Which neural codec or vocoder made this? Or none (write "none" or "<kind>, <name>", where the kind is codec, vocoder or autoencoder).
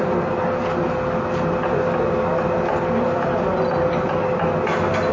none